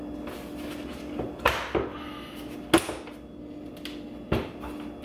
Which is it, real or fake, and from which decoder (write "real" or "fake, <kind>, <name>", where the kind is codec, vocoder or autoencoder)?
real